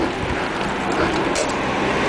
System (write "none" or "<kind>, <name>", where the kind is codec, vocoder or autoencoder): none